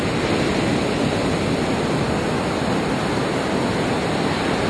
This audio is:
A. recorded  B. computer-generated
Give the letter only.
A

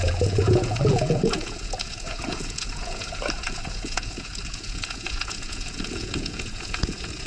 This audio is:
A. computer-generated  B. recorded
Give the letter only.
A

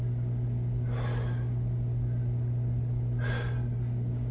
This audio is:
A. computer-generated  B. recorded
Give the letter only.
B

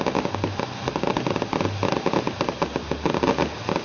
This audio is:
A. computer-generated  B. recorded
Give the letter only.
B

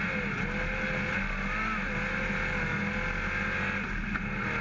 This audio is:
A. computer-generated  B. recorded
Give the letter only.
B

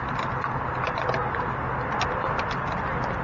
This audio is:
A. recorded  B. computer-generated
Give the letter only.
A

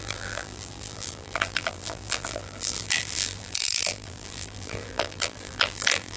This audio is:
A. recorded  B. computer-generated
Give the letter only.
B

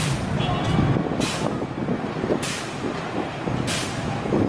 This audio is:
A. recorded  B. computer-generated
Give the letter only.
A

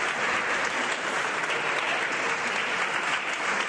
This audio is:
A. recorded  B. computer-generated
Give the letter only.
A